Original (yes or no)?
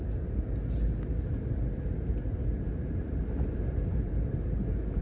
yes